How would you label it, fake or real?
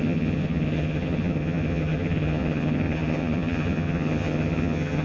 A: fake